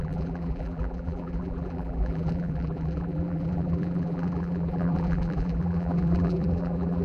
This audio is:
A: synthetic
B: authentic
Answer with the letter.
A